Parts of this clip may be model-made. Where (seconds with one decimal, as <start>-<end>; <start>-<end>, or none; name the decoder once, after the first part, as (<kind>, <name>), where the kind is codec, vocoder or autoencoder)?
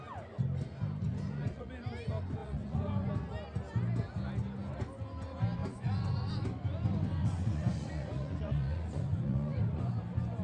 1.1-1.7 (vocoder, Vocos); 2.4-3.1; 5.6-6.3; 7.2-9.9